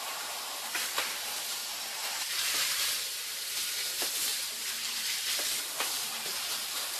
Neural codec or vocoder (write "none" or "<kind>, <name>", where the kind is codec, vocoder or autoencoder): vocoder, BigVGAN v2